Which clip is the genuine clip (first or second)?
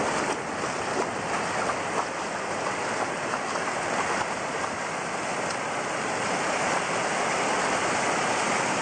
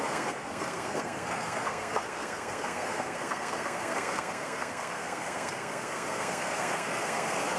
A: first